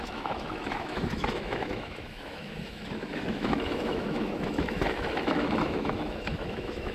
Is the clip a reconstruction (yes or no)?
yes